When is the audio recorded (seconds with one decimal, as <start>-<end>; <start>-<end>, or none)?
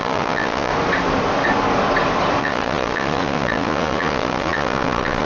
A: 0.7-2.4